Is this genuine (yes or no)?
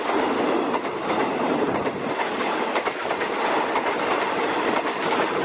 yes